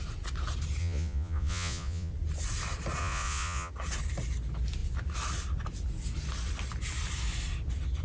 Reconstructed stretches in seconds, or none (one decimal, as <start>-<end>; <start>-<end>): 0.8-2.1; 3.0-3.7